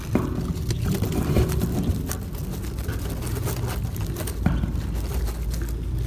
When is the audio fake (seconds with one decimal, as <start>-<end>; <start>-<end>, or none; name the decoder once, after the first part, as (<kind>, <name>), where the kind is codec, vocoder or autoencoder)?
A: none